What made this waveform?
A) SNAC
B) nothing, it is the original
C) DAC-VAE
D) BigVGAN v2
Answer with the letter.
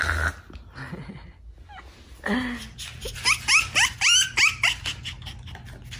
B